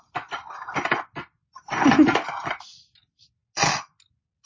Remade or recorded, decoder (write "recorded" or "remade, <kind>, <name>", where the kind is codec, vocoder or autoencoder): recorded